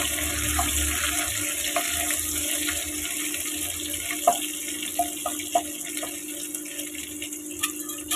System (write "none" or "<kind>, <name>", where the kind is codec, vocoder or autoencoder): none